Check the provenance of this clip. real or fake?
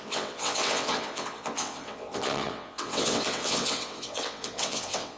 fake